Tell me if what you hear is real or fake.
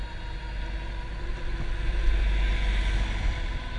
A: real